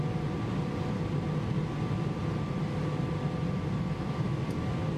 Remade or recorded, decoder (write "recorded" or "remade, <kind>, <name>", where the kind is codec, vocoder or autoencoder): recorded